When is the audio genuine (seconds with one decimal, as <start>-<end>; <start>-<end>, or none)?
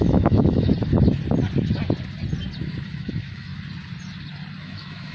0.7-2.6; 3.5-4.6